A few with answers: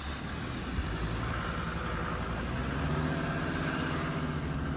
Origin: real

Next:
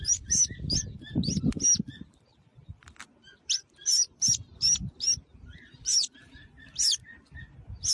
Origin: fake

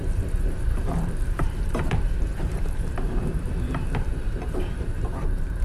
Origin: fake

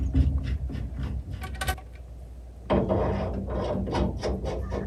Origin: real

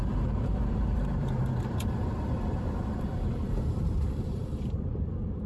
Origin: fake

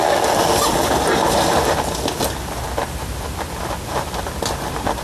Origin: real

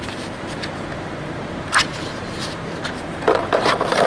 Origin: fake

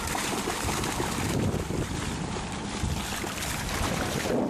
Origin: real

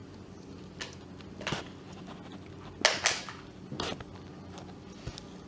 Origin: real